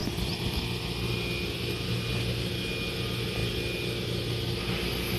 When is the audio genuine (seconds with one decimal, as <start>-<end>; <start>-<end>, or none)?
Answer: 0.0-5.2